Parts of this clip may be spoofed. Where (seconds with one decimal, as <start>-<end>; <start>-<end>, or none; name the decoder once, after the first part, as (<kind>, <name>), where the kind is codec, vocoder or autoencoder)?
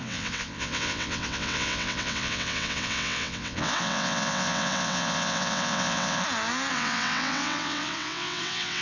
0.0-6.2 (vocoder, WaveNeXt); 6.7-8.8